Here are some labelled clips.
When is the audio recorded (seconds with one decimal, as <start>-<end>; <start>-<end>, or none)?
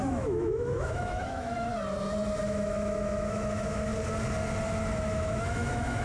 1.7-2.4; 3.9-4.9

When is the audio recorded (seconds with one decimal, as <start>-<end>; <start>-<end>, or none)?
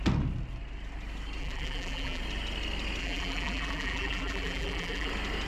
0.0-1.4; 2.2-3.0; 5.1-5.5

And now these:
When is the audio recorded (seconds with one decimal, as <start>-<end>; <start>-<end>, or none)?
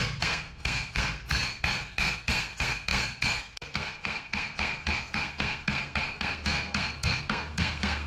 none